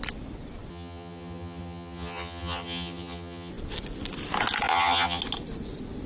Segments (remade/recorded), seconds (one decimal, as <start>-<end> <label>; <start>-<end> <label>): 0.0-0.7 recorded; 0.7-3.5 remade; 3.5-4.7 recorded; 4.7-5.2 remade; 5.2-6.1 recorded